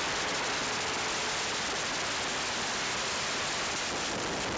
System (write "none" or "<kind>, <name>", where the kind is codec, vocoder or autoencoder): none